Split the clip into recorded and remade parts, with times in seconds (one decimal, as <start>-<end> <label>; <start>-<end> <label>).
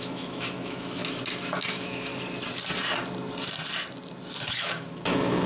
0.0-1.0 remade; 1.0-1.7 recorded; 1.7-2.1 remade; 2.1-4.5 recorded; 4.5-5.5 remade